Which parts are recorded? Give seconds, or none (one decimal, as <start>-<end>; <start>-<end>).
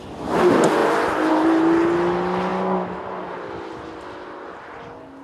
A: 0.0-5.2